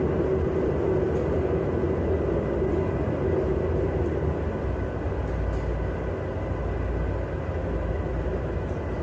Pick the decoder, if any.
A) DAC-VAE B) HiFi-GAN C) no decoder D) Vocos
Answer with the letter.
C